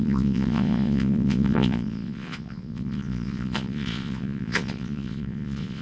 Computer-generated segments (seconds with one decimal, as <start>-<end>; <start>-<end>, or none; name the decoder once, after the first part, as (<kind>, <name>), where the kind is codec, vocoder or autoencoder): 0.0-5.8 (vocoder, Vocos)